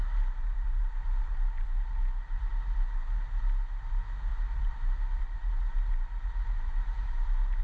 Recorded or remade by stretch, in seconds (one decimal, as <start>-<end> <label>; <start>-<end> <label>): 0.0-3.3 remade; 3.3-4.3 recorded; 4.3-7.6 remade